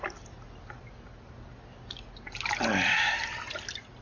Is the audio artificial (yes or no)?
no